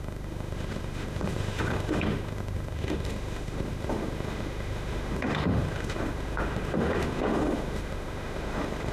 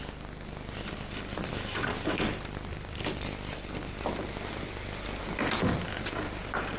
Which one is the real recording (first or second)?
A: second